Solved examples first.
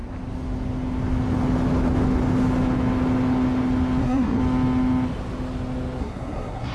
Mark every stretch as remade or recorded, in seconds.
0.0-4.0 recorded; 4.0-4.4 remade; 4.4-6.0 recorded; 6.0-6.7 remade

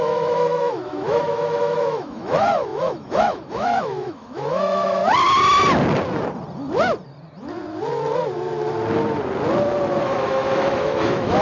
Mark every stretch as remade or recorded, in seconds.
0.0-5.0 remade; 5.0-10.0 recorded; 10.0-11.4 remade

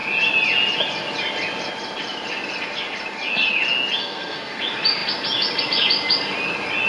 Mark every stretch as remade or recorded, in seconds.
0.0-4.0 recorded; 4.0-4.6 remade; 4.6-6.9 recorded